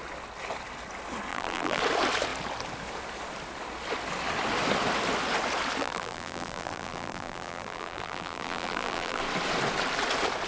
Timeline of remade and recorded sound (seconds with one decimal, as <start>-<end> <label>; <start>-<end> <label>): 0.0-1.3 recorded; 1.3-1.8 remade; 1.8-5.8 recorded; 5.8-9.2 remade; 9.2-10.5 recorded